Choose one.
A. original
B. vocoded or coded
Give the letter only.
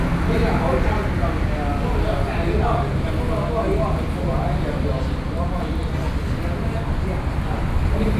A